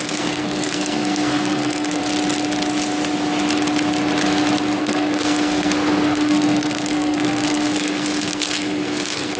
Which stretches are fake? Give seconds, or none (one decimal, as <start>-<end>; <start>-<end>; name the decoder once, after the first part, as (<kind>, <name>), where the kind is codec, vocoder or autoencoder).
0.0-2.0 (codec, SNAC); 4.8-9.4